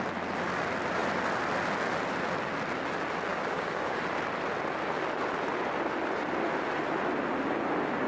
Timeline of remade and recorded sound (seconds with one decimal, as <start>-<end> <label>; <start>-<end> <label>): 0.0-3.3 recorded; 3.3-4.0 remade; 4.0-8.1 recorded